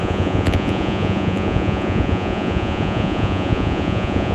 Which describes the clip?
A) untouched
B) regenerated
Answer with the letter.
B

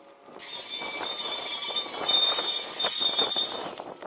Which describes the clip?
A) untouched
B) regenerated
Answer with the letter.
A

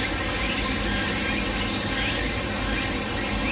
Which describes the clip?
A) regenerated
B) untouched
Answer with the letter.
B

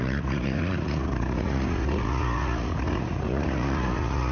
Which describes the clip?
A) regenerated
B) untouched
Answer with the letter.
A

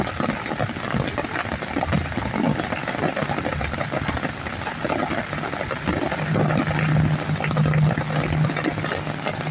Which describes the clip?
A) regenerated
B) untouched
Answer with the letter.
B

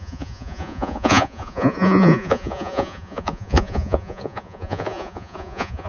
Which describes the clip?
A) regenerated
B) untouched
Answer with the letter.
A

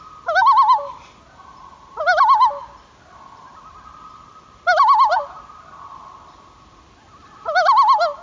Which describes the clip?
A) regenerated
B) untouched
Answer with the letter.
B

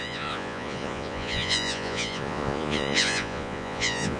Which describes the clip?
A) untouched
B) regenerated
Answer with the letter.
B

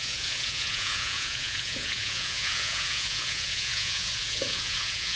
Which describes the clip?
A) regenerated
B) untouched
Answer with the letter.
A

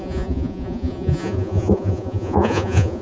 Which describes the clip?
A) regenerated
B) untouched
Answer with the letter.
A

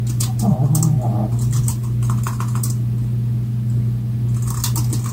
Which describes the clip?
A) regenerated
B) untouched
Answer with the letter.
B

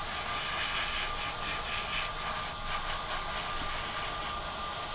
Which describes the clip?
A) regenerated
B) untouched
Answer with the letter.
B